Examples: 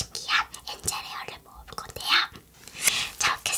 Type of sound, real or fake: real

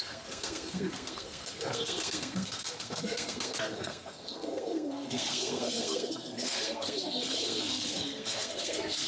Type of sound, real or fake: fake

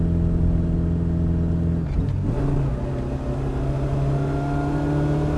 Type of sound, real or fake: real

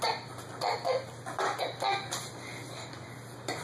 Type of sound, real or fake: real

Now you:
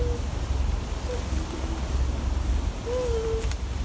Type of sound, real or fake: real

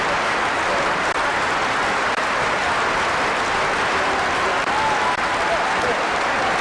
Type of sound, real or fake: real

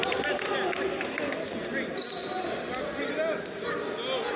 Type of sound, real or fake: real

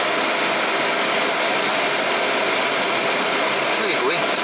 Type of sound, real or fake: real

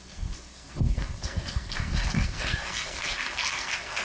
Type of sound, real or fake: fake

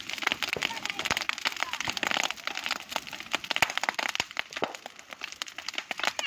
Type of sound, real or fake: real